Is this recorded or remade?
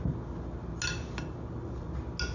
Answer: recorded